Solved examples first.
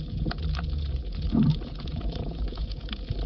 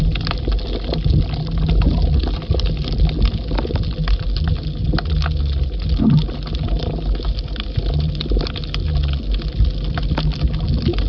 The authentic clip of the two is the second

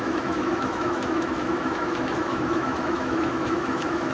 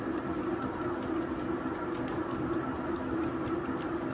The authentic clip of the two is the second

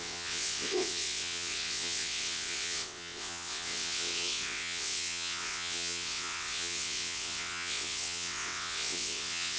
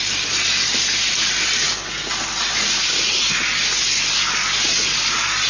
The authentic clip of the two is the second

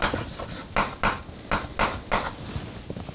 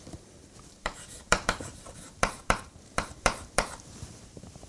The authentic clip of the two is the first